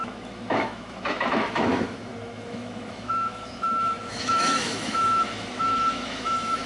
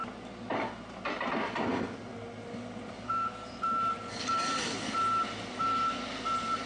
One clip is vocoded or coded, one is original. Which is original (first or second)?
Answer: second